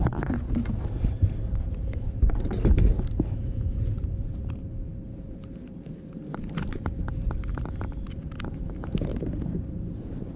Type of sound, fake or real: fake